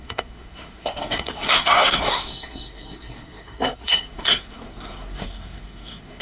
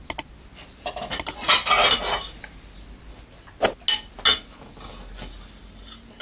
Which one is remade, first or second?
first